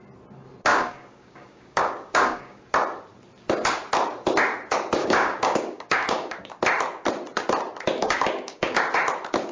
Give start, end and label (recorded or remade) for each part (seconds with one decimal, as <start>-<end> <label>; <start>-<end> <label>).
0.0-0.7 recorded; 0.7-2.6 remade; 2.6-5.0 recorded; 5.0-6.5 remade; 6.5-8.0 recorded; 8.0-8.8 remade; 8.8-9.5 recorded